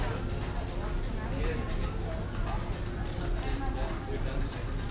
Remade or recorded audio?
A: recorded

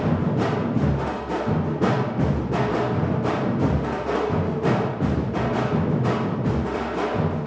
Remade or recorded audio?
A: recorded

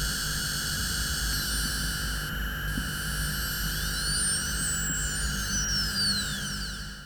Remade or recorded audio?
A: recorded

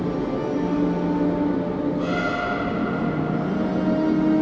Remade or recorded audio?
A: recorded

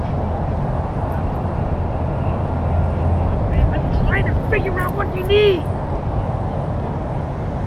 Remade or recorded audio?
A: recorded